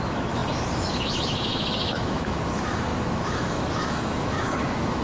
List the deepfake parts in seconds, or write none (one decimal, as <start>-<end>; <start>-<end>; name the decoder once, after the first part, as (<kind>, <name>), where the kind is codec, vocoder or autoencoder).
0.0-5.0 (autoencoder, DAC-VAE)